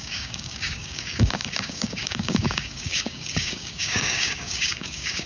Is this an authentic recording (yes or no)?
no